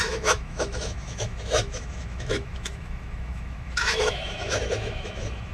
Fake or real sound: fake